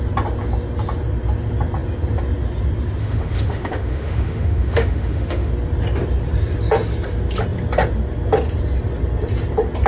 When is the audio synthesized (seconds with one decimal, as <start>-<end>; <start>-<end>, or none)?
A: 3.0-5.5